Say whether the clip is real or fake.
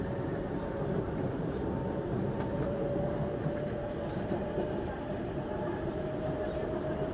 fake